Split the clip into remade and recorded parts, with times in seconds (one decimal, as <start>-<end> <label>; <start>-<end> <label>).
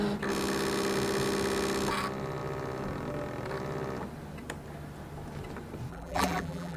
0.0-5.9 recorded; 5.9-6.8 remade